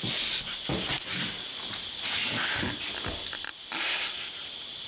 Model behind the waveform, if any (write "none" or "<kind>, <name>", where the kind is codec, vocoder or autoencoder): none